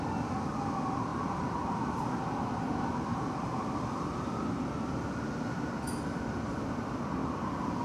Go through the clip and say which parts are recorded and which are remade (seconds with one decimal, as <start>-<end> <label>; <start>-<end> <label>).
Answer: 0.0-1.1 recorded; 1.1-3.7 remade; 3.7-7.2 recorded; 7.2-7.8 remade